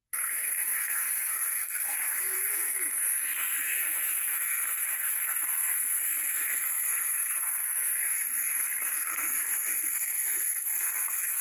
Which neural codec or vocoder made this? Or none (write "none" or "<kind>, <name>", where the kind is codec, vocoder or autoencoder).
codec, SNAC